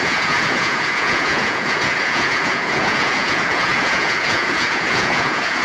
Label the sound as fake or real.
fake